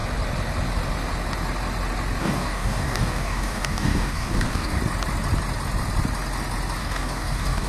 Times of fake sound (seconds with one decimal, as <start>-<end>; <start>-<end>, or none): 2.2-4.8; 6.8-7.7